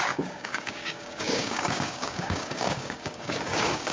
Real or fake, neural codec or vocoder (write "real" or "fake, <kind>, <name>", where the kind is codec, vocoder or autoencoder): fake, codec, DAC